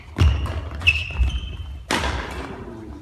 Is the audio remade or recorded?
recorded